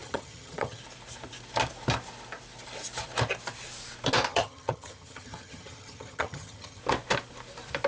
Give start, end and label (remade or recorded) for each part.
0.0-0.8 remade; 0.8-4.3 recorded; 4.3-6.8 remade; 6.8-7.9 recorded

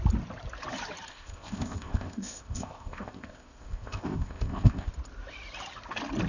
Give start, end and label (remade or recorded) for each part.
0.0-1.1 recorded; 1.1-4.9 remade; 4.9-6.3 recorded

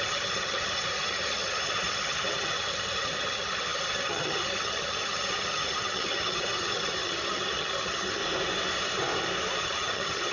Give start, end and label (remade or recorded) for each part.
0.0-8.2 remade; 8.2-9.6 recorded; 9.6-10.3 remade

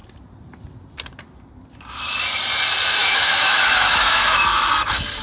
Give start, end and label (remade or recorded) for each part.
0.0-3.0 recorded; 3.0-4.7 remade; 4.7-5.2 recorded

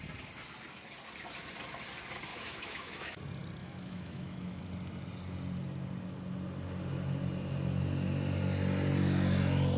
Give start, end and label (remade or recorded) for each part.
0.0-2.3 recorded; 2.3-3.2 remade; 3.2-3.6 recorded; 3.6-4.6 remade; 4.6-9.8 recorded